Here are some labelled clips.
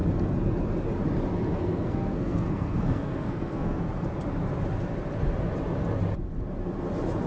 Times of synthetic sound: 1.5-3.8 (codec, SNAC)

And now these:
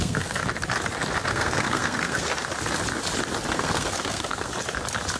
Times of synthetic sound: 0.0-0.4 (codec, SNAC); 1.3-2.3; 3.5-4.5

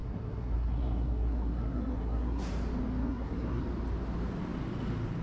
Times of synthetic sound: 0.0-2.5 (codec, SNAC); 3.0-3.6

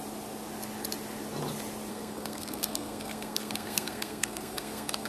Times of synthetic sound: 1.9-5.1 (codec, SNAC)

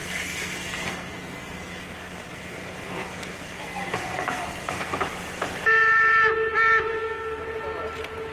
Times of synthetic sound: 0.0-5.0 (codec, SNAC); 6.9-7.4

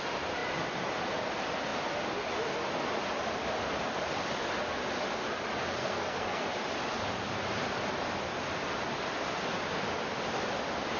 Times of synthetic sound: 5.8-6.4 (codec, SNAC)